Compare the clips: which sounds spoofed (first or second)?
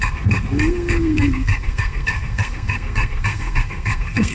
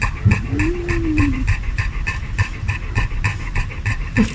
first